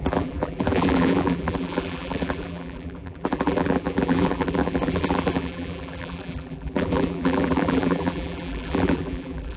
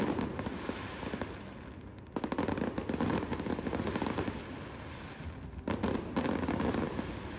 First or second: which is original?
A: second